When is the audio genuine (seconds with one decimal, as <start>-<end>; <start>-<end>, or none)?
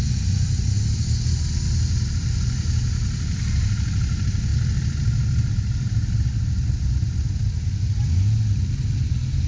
0.0-9.5